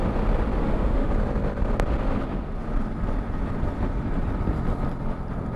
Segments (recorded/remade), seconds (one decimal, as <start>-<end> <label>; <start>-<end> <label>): 0.0-0.6 recorded; 0.6-1.1 remade; 1.1-5.6 recorded